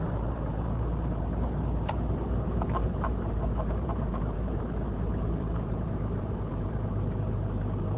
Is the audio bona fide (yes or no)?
no